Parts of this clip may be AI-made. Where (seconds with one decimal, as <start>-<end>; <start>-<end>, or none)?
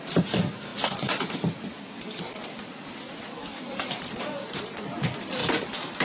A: 0.0-0.7; 3.6-5.4